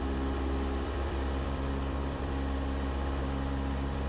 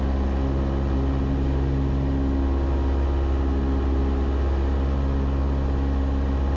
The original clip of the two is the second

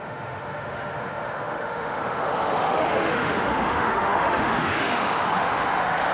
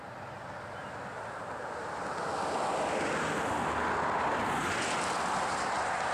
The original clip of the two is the second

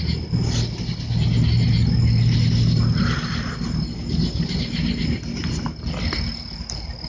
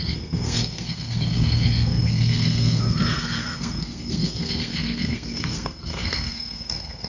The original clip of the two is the first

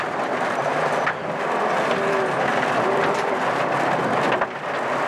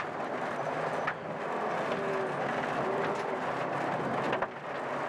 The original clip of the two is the second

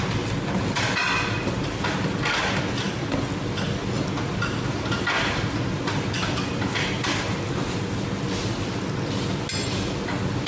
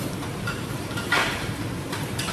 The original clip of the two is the first